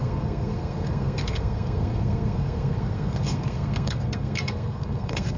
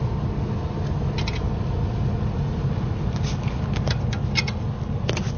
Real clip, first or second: second